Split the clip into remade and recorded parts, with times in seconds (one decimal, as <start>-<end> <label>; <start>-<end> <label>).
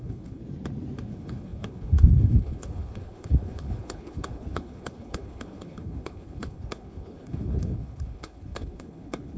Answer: 0.0-0.4 remade; 0.4-1.1 recorded; 1.1-9.4 remade